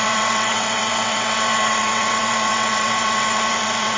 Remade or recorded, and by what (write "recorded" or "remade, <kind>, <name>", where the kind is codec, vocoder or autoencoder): remade, vocoder, WaveNeXt